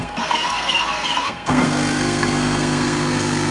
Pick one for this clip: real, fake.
fake